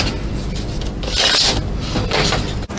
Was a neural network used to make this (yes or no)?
no